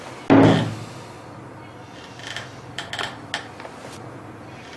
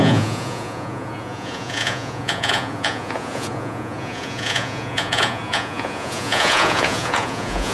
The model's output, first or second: second